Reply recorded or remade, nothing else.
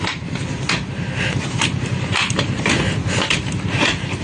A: recorded